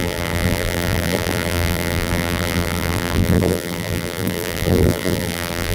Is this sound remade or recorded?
remade